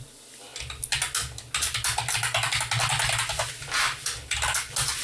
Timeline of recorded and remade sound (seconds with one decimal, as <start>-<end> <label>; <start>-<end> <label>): 0.0-5.0 recorded